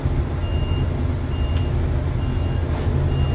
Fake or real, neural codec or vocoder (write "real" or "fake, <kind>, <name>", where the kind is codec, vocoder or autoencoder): real